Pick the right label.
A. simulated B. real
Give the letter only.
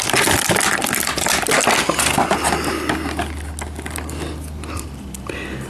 B